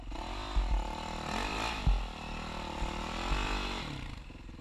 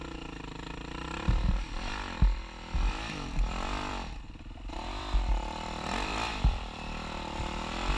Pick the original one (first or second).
first